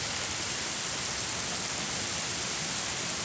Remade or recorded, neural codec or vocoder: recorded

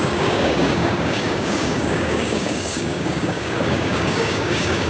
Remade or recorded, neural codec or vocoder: remade, codec, DAC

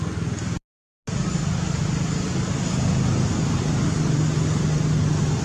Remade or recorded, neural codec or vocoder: recorded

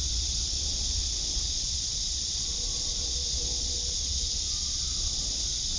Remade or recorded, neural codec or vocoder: remade, vocoder, Vocos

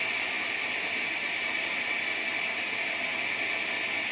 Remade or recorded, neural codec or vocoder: recorded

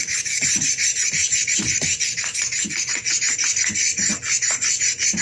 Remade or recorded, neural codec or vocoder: recorded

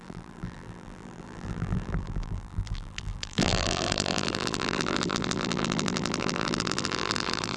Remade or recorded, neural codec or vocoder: remade, vocoder, BigVGAN v2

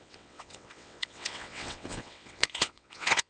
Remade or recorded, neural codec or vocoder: remade, vocoder, WaveNeXt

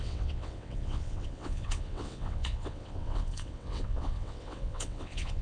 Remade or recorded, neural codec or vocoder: remade, vocoder, WaveNeXt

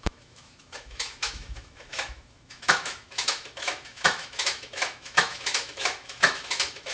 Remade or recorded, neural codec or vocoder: remade, autoencoder, DAC-VAE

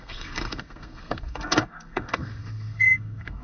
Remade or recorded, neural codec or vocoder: remade, codec, SNAC